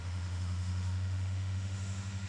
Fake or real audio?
fake